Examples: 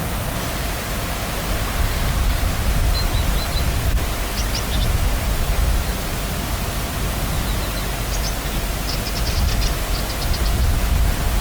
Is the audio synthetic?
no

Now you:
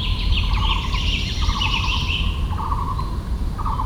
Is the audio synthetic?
yes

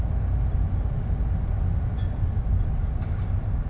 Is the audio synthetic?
no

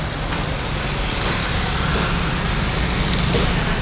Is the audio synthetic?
no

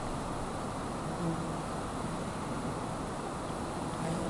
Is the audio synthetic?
no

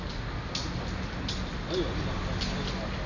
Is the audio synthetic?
no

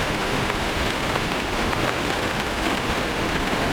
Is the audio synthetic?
yes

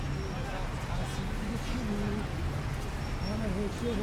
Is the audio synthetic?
no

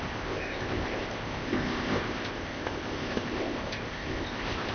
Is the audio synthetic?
yes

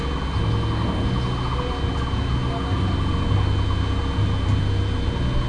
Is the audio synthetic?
no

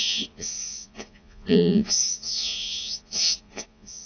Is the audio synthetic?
yes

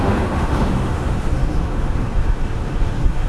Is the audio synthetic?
yes